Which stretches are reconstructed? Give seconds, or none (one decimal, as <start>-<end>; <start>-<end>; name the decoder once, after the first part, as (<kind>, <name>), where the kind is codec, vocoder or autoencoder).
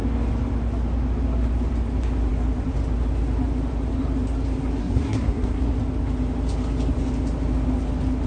4.8-5.7 (codec, SNAC)